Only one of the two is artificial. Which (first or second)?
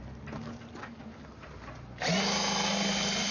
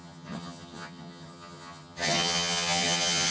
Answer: second